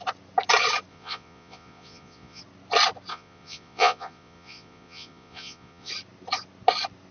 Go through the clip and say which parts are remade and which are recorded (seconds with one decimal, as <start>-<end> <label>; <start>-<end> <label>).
0.0-0.9 recorded; 0.9-2.4 remade; 2.4-3.1 recorded; 3.1-5.9 remade; 5.9-7.1 recorded